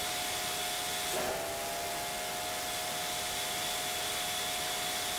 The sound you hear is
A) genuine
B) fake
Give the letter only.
A